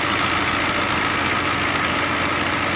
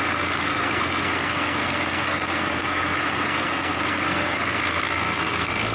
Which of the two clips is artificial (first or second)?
second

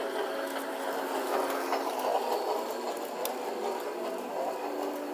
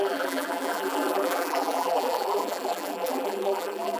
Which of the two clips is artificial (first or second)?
second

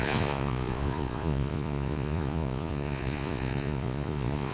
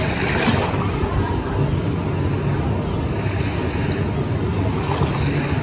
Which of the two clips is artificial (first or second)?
first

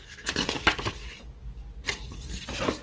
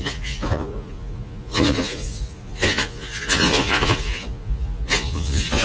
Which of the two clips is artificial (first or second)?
second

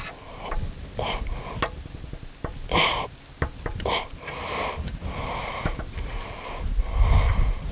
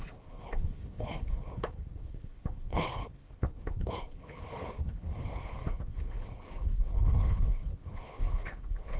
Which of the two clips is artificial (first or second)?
second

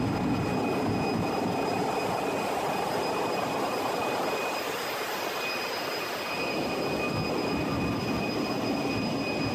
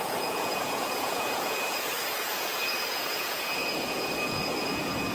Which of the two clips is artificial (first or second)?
second